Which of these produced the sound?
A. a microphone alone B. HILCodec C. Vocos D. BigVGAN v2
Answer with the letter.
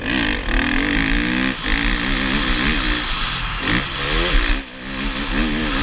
A